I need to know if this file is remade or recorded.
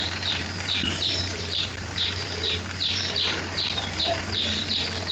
remade